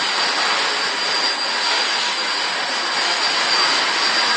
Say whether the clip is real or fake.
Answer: real